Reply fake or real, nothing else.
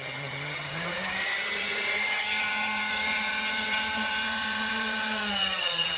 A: fake